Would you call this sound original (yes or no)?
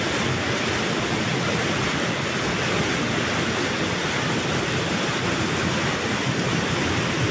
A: yes